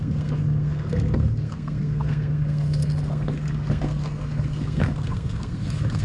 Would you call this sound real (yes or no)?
no